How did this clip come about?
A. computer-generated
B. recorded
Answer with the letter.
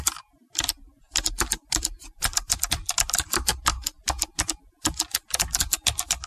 B